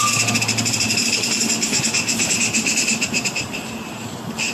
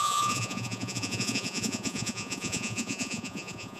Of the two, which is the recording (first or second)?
first